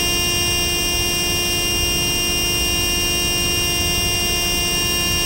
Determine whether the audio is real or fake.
real